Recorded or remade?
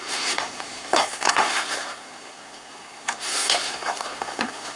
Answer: remade